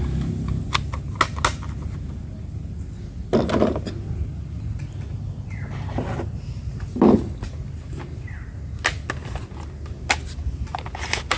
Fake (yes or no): no